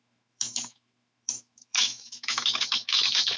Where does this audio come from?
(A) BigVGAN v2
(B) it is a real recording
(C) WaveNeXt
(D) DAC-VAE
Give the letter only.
D